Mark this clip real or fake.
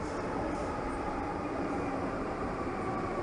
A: fake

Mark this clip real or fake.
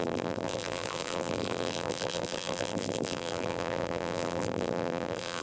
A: fake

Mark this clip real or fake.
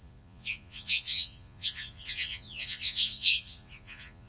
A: fake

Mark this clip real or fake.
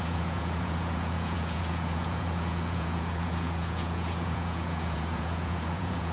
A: fake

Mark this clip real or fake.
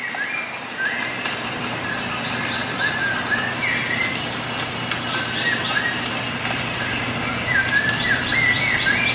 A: real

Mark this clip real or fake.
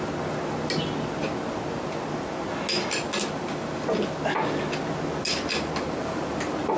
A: real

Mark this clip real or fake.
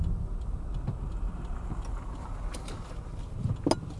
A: real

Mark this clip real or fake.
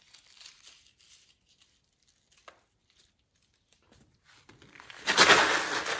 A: real